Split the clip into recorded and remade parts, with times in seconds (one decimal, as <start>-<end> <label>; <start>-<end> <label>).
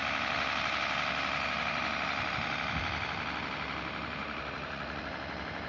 0.0-4.2 recorded; 4.2-5.1 remade; 5.1-5.7 recorded